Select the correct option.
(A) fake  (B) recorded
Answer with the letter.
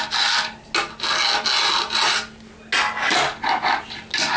B